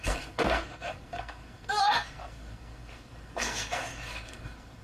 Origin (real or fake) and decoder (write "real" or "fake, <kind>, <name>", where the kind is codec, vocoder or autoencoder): fake, codec, SNAC